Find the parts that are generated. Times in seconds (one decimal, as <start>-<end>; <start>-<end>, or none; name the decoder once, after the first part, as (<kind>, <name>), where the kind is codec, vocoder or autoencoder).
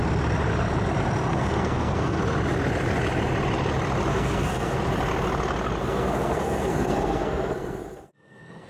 1.3-2.2 (codec, SNAC); 4.1-4.8; 5.8-8.7